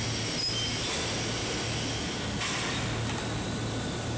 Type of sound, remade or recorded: recorded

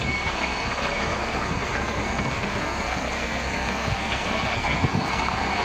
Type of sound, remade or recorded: remade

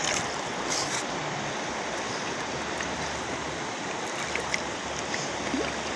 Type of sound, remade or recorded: recorded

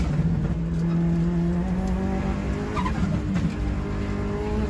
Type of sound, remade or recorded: recorded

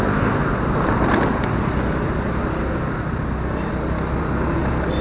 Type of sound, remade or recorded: recorded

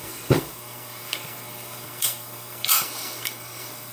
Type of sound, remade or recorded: remade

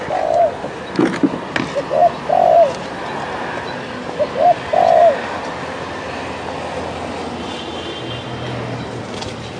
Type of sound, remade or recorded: recorded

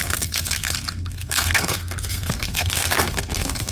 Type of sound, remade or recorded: remade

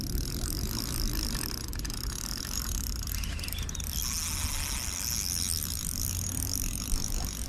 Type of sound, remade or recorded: recorded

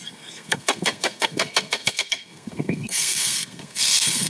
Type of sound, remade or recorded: remade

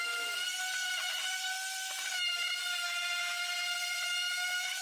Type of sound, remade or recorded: recorded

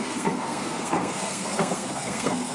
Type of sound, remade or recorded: remade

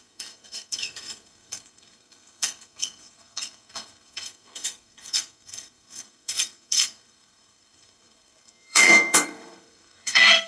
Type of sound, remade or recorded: remade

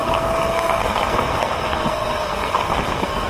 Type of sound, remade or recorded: remade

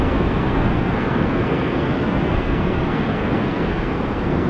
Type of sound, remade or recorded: remade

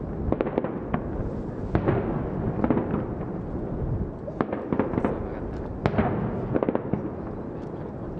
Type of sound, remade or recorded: recorded